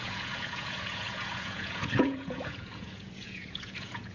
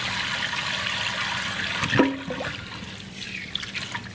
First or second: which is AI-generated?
first